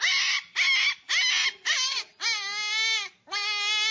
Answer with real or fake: real